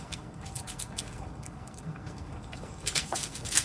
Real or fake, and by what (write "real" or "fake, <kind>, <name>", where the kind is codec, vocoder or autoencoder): fake, codec, SNAC